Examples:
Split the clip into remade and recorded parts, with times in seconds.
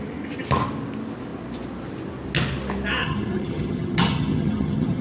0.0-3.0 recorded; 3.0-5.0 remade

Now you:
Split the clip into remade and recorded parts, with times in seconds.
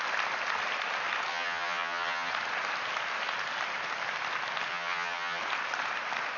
0.0-1.3 recorded; 1.3-2.3 remade; 2.3-4.7 recorded; 4.7-5.4 remade; 5.4-6.4 recorded